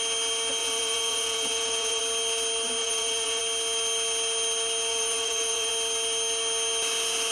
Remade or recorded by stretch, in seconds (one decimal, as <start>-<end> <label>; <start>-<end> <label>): 0.0-0.6 recorded; 0.6-2.0 remade; 2.0-2.8 recorded; 2.8-3.4 remade; 3.4-4.9 recorded; 4.9-5.7 remade; 5.7-7.3 recorded